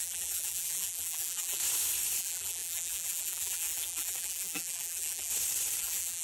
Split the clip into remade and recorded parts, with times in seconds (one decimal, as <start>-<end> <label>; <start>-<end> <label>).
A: 0.0-1.6 remade; 1.6-2.2 recorded; 2.2-5.3 remade; 5.3-5.8 recorded; 5.8-6.2 remade

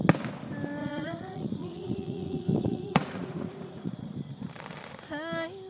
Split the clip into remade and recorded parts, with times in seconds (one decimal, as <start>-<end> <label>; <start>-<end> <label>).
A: 0.0-0.8 recorded; 0.8-4.0 remade; 4.0-5.7 recorded